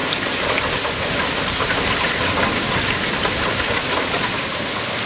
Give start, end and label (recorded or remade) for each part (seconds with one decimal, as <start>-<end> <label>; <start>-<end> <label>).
0.0-5.1 recorded